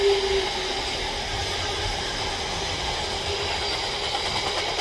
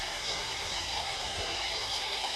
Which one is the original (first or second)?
first